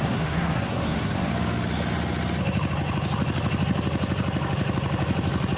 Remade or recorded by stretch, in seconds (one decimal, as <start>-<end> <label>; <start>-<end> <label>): 0.0-1.3 remade; 1.3-5.6 recorded